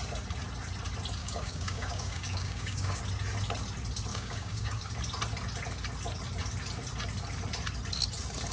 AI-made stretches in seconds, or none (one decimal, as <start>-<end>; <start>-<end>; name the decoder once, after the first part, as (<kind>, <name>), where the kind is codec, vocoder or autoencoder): 1.2-3.0 (codec, DAC); 4.1-4.9